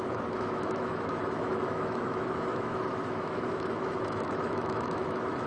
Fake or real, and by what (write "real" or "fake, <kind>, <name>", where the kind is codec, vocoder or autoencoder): fake, autoencoder, DAC-VAE